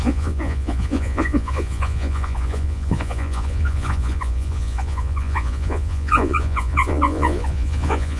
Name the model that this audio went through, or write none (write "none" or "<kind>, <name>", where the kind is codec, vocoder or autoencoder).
vocoder, Vocos